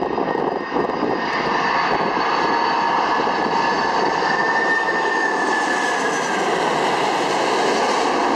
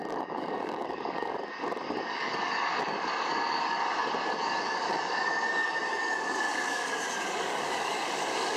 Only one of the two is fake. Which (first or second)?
second